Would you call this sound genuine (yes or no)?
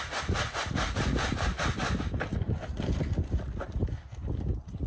yes